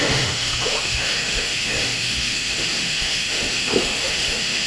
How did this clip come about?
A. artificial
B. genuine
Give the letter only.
A